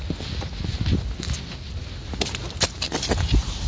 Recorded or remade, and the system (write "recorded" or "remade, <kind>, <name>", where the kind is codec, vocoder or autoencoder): recorded